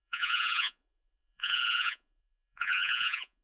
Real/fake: fake